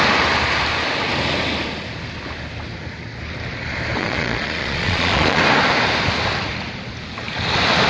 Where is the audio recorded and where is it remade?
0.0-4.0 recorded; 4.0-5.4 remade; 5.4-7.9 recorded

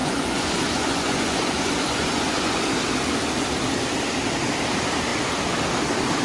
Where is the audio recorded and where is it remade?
0.0-2.6 remade; 2.6-6.2 recorded